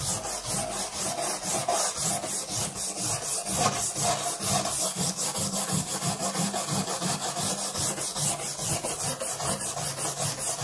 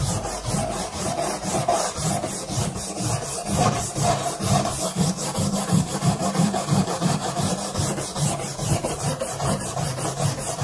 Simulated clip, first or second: second